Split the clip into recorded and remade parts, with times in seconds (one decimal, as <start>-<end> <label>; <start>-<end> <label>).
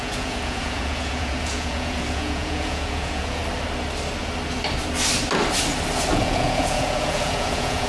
0.0-3.4 remade; 3.4-6.1 recorded; 6.1-7.9 remade